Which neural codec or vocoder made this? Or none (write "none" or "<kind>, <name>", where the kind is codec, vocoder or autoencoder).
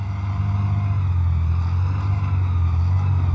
none